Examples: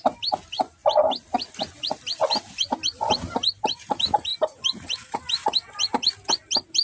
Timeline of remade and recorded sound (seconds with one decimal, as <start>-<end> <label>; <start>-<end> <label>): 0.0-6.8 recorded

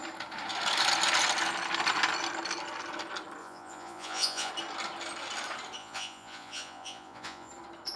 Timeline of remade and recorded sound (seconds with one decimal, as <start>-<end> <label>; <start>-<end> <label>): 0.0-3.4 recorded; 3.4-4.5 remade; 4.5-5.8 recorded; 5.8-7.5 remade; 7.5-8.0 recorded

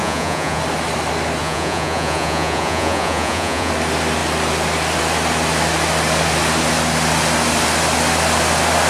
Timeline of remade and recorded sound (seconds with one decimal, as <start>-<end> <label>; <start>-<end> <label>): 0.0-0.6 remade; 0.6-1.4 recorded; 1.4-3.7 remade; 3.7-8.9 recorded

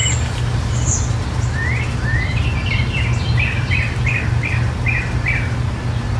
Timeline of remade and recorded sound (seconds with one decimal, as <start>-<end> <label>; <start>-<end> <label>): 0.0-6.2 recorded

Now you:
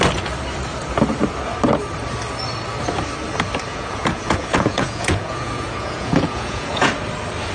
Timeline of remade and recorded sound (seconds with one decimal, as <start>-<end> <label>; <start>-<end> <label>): 0.0-3.7 recorded; 3.7-6.9 remade; 6.9-7.5 recorded